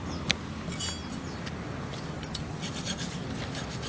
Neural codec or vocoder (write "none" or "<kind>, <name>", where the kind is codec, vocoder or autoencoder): none